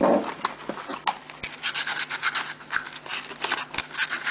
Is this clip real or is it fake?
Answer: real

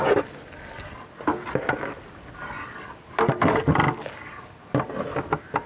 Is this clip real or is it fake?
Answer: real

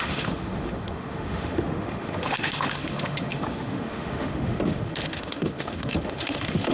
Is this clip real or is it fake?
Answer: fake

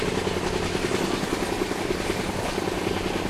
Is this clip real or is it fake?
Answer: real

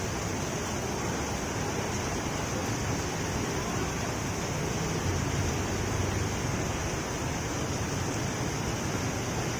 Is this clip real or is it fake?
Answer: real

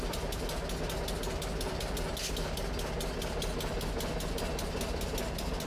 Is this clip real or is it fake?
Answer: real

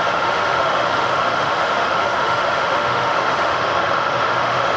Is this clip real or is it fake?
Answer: fake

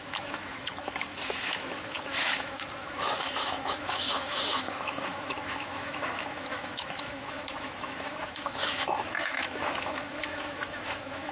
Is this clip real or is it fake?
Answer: fake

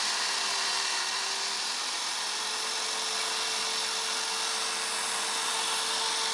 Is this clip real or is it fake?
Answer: real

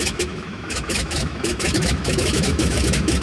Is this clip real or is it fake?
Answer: fake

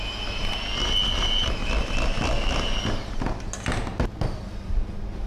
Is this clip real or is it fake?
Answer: real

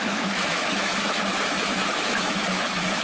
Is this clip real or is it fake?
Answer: fake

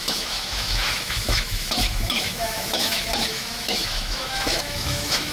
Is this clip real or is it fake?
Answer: fake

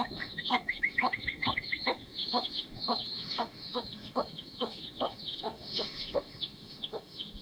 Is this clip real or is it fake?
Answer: fake